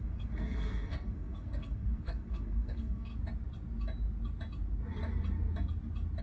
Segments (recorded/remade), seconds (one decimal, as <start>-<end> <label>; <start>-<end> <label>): 0.0-3.1 remade; 3.1-6.2 recorded